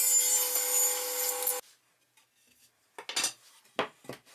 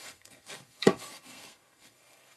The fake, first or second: second